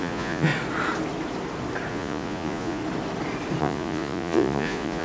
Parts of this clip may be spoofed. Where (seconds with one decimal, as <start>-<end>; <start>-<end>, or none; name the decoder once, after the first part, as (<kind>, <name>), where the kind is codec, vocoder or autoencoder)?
0.0-0.5 (vocoder, Vocos); 1.9-2.8; 3.6-5.0

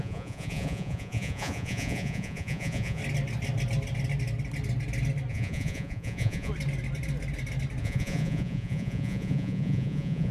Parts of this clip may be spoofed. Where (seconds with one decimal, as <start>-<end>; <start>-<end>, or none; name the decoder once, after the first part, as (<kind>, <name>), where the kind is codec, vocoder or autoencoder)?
0.0-3.0 (vocoder, Vocos); 5.3-6.5; 7.8-10.3